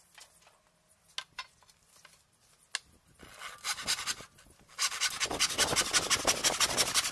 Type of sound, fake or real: real